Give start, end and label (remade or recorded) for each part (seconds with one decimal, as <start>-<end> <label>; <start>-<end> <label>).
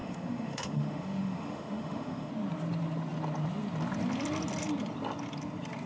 0.0-2.3 remade; 2.3-5.9 recorded